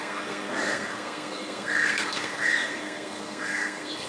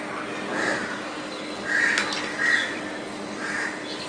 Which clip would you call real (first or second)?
second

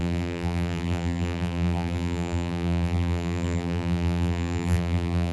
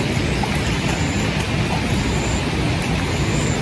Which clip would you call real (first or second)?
second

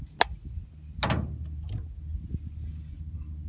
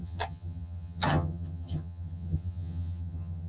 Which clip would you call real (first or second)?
first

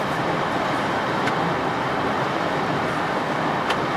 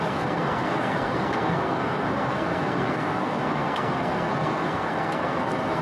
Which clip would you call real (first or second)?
first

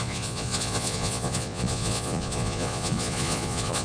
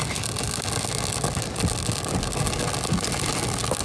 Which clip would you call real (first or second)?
second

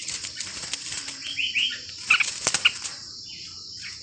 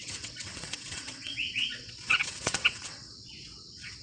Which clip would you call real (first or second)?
first